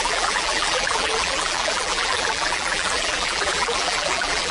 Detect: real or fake fake